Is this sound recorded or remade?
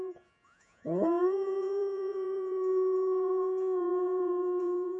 remade